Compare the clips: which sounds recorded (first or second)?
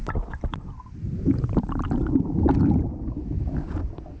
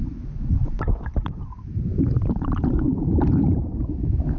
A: first